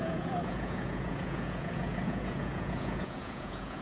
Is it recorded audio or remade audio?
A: remade